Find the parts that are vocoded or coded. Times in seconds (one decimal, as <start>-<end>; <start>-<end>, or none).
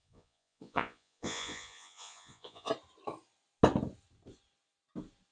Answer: 0.0-2.7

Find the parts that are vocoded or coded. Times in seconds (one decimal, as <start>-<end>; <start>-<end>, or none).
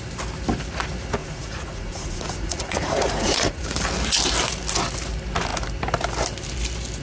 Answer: 1.2-3.8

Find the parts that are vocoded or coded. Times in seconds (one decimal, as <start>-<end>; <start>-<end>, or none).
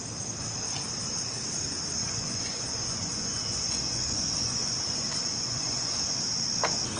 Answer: 2.0-6.2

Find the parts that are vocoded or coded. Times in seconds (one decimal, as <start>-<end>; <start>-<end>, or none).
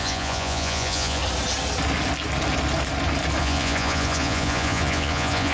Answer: 0.0-1.2; 3.4-5.5